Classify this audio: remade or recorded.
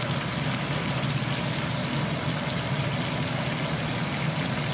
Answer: recorded